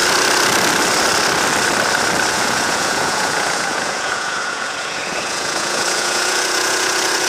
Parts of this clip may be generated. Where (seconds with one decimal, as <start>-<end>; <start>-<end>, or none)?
2.3-7.3